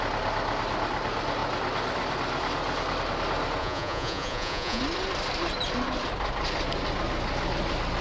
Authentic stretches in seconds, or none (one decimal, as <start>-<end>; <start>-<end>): 0.0-3.6; 4.8-8.0